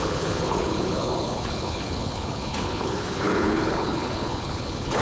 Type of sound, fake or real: fake